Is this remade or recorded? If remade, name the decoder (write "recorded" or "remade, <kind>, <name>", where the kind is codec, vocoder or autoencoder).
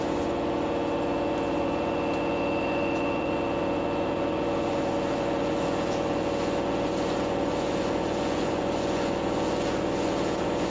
remade, vocoder, Vocos